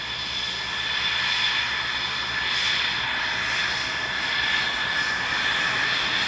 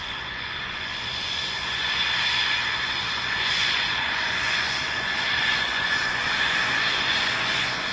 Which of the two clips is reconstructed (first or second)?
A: second